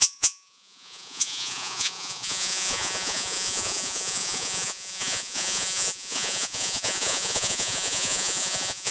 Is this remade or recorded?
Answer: remade